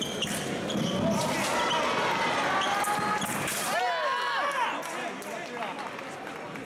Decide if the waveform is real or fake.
real